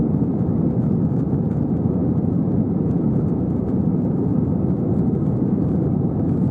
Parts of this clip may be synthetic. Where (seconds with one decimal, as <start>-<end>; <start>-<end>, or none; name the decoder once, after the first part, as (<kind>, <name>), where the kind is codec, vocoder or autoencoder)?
0.0-0.4 (vocoder, BigVGAN v2); 1.3-6.5

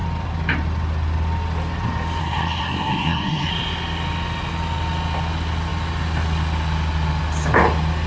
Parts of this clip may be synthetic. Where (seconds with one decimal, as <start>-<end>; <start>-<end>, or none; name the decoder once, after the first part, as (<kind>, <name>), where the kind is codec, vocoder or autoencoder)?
2.2-3.5 (codec, SNAC)

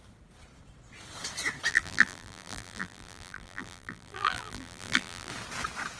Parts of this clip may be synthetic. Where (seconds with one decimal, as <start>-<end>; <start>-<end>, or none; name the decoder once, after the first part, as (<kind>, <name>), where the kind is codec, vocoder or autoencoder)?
1.7-5.3 (vocoder, BigVGAN v2)